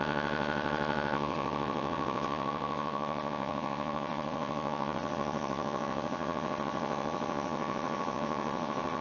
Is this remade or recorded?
remade